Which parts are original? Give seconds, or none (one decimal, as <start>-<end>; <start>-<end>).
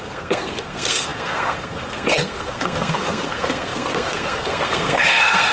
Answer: none